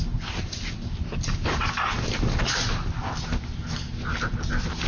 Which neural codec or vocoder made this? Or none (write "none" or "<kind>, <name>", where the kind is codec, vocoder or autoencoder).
none